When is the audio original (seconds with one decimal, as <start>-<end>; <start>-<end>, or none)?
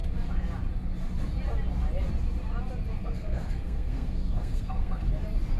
0.0-3.0; 5.1-5.6